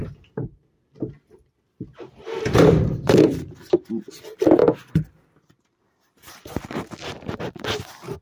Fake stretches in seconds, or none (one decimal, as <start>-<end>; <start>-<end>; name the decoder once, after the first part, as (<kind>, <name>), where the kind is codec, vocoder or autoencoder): 0.0-8.2 (vocoder, BigVGAN v2)